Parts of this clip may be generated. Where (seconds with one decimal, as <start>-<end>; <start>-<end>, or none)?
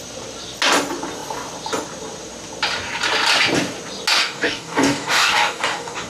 4.2-6.1